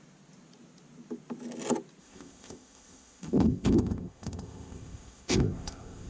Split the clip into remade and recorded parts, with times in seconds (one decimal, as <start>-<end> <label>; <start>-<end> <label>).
0.0-2.0 recorded; 2.0-6.1 remade